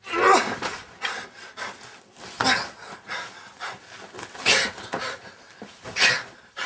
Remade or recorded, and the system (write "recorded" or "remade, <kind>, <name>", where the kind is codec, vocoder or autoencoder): recorded